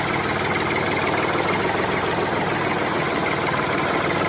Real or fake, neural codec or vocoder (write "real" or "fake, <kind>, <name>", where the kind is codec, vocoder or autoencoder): real